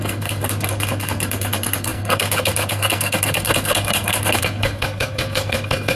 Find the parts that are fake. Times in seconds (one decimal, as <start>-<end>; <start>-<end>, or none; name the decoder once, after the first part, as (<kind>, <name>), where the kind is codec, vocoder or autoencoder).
0.0-6.0 (codec, SNAC)